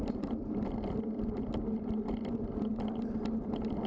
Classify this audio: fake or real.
real